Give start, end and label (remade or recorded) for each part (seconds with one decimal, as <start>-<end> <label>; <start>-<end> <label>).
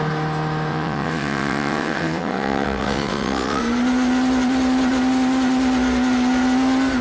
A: 0.0-0.7 recorded; 0.7-3.6 remade; 3.6-7.0 recorded